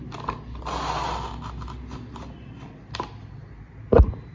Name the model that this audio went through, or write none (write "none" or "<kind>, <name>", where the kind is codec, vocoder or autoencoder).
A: none